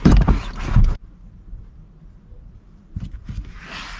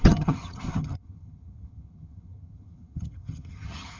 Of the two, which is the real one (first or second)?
first